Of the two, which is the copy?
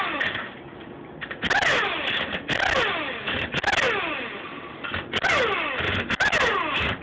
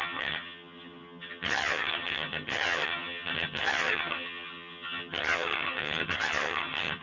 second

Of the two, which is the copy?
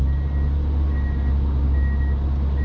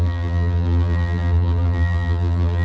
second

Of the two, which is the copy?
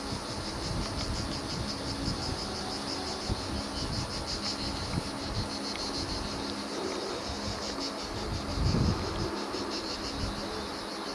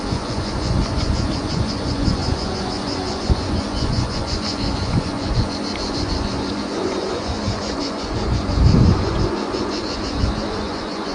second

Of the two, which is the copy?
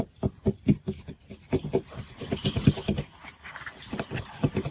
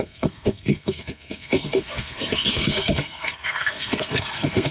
second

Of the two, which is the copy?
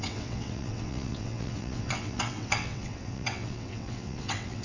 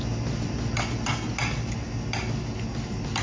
first